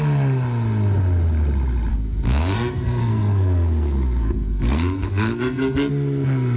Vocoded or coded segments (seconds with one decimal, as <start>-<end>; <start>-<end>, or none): 1.9-5.9